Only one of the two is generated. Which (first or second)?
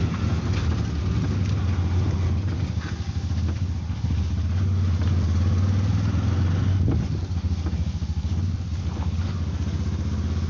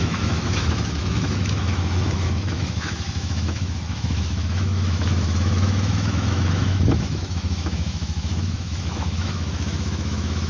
second